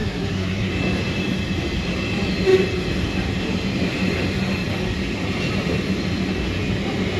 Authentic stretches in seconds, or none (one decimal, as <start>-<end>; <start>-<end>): 0.7-7.2